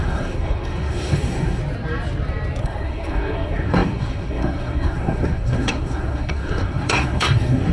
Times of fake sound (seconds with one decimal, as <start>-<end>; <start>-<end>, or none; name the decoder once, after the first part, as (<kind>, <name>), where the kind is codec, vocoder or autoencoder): 0.0-1.6 (codec, SNAC); 2.6-7.7